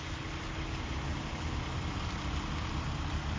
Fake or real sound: real